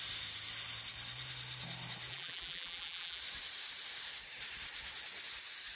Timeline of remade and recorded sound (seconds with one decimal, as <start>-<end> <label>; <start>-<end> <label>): 0.0-2.1 recorded; 2.1-3.2 remade; 3.2-5.8 recorded